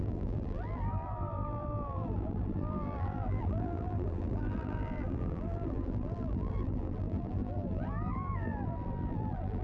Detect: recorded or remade remade